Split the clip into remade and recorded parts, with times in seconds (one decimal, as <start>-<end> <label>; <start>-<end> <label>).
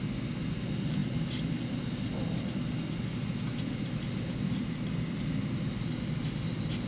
0.0-6.9 recorded